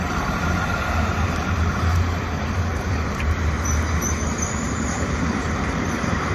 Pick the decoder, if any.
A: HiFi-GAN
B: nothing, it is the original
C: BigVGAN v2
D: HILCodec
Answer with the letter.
C